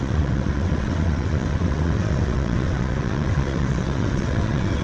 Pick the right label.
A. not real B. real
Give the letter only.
A